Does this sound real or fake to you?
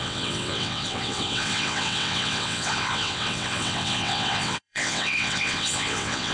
fake